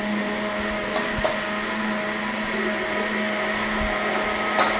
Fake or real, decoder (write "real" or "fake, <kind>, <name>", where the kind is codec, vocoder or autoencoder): real